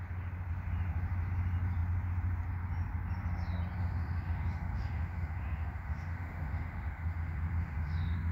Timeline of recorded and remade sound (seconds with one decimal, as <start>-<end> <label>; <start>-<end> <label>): 0.0-3.8 recorded; 3.8-8.3 remade